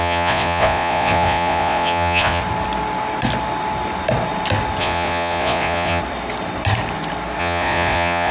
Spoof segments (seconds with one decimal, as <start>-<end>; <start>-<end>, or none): 0.0-2.4; 4.8-6.0; 7.4-8.3